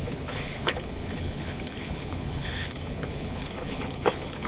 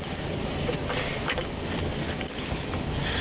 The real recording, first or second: second